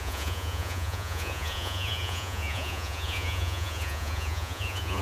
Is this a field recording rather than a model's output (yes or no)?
no